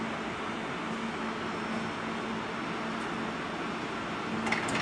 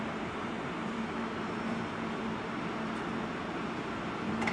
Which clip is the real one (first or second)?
first